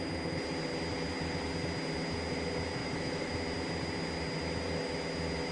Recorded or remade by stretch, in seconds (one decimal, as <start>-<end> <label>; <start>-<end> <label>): 0.0-2.8 recorded; 2.8-3.3 remade; 3.3-5.5 recorded